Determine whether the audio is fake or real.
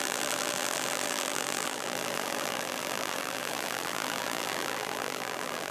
fake